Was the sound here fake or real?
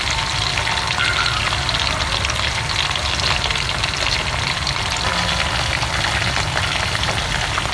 real